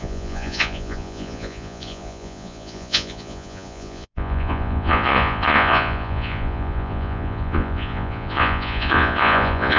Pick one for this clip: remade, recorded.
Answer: remade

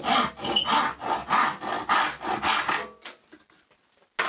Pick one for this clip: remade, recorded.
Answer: recorded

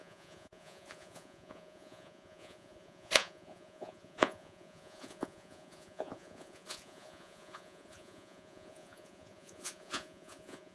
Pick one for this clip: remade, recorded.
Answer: remade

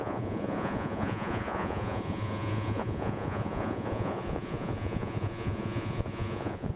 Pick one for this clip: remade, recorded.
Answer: remade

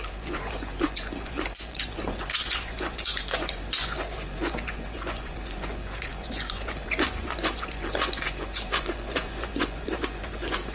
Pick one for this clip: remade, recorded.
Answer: remade